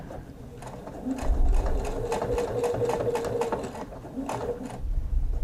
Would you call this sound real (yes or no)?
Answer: yes